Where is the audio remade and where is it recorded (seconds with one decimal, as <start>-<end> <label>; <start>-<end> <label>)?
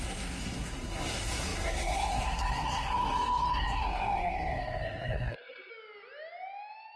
0.0-5.7 remade; 5.7-7.0 recorded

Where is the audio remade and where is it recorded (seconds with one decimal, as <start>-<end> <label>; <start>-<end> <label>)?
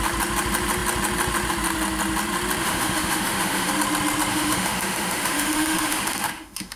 0.0-2.6 recorded; 2.6-3.7 remade; 3.7-4.3 recorded; 4.3-6.8 remade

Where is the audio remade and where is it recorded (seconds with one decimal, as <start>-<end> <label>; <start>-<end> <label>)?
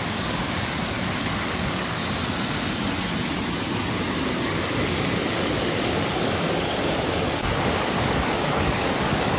0.0-2.0 remade; 2.0-4.2 recorded; 4.2-9.4 remade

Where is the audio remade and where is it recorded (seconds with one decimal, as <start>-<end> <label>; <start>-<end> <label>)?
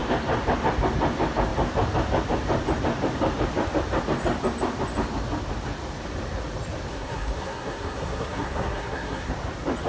0.0-6.9 recorded; 6.9-9.3 remade; 9.3-9.9 recorded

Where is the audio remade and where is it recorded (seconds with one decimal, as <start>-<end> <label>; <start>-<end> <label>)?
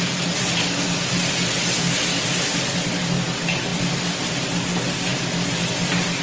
0.0-6.2 recorded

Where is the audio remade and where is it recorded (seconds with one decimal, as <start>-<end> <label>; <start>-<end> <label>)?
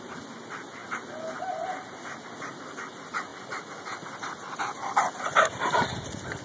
0.0-6.4 recorded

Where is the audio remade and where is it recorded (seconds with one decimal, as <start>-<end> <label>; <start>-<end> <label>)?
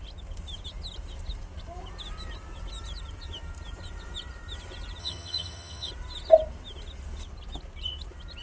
0.0-5.0 recorded; 5.0-5.9 remade; 5.9-8.4 recorded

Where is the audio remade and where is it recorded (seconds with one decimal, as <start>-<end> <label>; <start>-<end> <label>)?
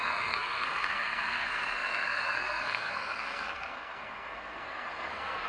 0.0-5.5 remade